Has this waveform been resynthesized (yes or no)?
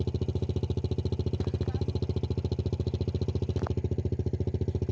no